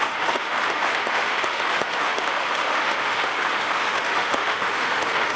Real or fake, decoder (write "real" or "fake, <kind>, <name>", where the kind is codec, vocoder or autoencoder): fake, autoencoder, DAC-VAE